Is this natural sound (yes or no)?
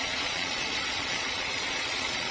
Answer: no